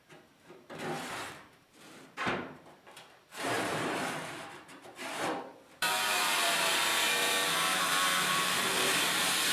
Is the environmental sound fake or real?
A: fake